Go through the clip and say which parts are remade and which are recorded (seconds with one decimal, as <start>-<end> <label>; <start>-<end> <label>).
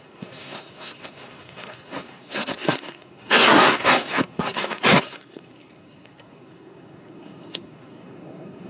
0.0-8.7 remade